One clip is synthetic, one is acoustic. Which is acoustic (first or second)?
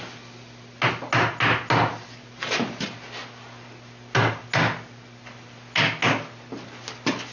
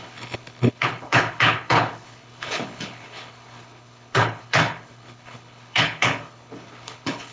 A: first